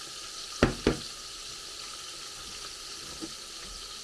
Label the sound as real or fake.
real